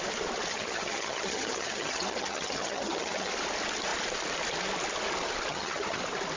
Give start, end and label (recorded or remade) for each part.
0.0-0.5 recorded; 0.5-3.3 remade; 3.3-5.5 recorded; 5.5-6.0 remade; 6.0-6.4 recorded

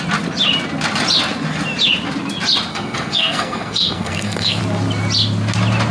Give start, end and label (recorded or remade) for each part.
0.0-2.7 recorded; 2.7-4.6 remade; 4.6-5.9 recorded

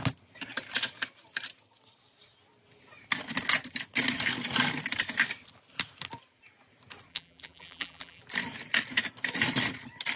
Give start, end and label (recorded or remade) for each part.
0.0-7.1 recorded; 7.1-8.2 remade; 8.2-10.2 recorded

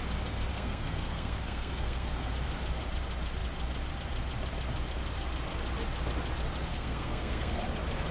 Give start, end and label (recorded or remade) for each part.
0.0-0.5 recorded; 0.5-2.3 remade; 2.3-6.7 recorded; 6.7-7.6 remade; 7.6-8.1 recorded

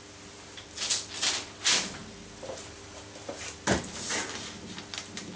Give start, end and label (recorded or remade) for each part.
0.0-5.4 recorded